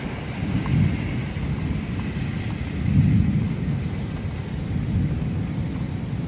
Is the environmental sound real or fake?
real